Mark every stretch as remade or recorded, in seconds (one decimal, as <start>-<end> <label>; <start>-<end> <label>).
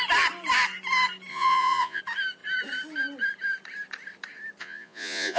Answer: 0.0-1.3 recorded; 1.3-2.0 remade; 2.0-4.6 recorded; 4.6-5.4 remade